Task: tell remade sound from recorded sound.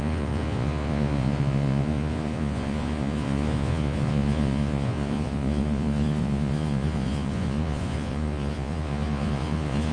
remade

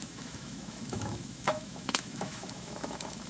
remade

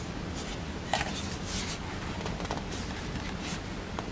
recorded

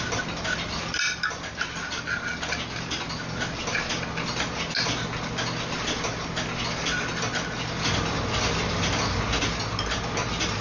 recorded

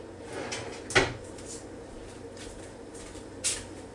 recorded